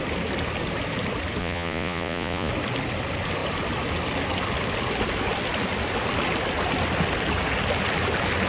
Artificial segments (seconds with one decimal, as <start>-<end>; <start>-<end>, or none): 1.4-2.5